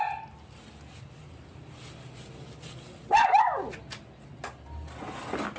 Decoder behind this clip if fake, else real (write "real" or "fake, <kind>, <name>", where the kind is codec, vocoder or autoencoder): real